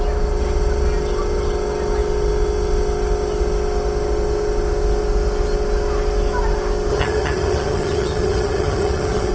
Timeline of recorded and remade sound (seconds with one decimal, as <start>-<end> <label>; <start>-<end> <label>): 0.0-6.9 recorded; 6.9-9.3 remade